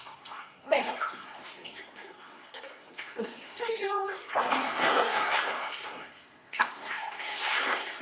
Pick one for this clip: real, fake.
fake